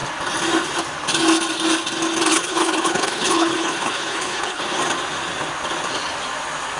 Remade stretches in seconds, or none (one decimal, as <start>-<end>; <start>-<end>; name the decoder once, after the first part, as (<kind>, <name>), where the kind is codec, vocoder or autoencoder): 2.3-4.6 (codec, HILCodec)